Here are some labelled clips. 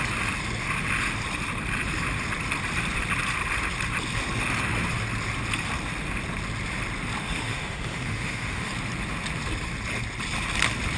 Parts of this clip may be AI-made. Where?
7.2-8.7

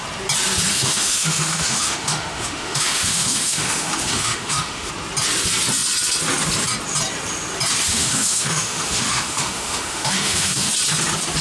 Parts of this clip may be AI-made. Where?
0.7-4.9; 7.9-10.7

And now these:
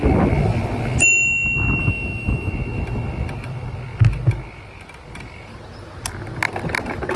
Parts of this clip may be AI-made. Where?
1.8-2.5

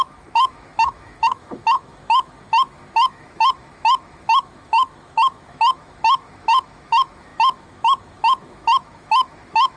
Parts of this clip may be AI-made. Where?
0.0-9.8